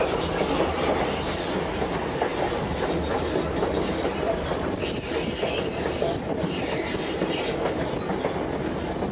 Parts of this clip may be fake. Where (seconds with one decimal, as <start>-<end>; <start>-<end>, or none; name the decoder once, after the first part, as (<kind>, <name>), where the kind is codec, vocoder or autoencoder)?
2.3-6.2 (vocoder, BigVGAN v2)